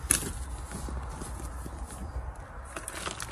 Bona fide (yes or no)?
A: yes